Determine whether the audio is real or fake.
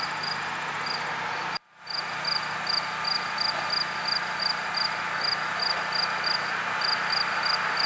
real